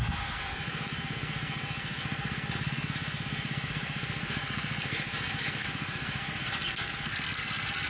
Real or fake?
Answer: fake